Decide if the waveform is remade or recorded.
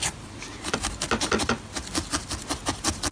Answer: recorded